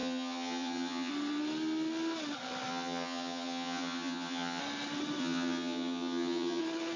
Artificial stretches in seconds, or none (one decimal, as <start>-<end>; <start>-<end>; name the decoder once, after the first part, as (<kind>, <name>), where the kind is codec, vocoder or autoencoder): 0.0-1.1 (vocoder, HiFi-GAN); 2.7-4.6; 5.2-6.6